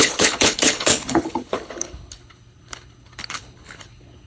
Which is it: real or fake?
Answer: fake